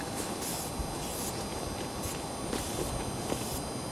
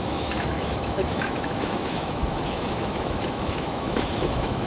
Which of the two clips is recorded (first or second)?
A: first